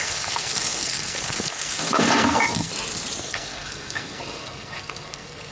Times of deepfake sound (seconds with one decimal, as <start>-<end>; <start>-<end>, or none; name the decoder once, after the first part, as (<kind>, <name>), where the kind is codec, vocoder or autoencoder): 0.0-2.7 (codec, SNAC); 3.2-5.5